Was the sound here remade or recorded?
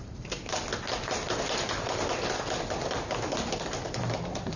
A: recorded